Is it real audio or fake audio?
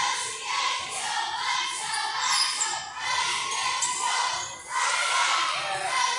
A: real